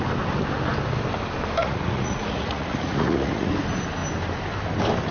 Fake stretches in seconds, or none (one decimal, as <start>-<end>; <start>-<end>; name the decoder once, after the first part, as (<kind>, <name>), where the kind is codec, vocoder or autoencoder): 1.6-3.5 (vocoder, Vocos)